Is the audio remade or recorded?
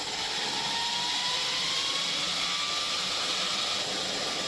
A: recorded